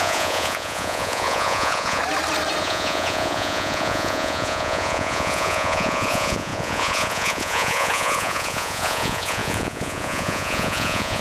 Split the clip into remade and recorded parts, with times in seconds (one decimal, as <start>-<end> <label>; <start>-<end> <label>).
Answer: 0.0-2.0 remade; 2.0-2.6 recorded; 2.6-11.2 remade